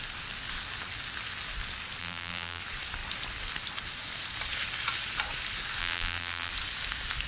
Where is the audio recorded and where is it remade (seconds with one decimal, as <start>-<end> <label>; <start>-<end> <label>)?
0.0-2.0 recorded; 2.0-2.6 remade; 2.6-5.8 recorded; 5.8-6.5 remade; 6.5-7.3 recorded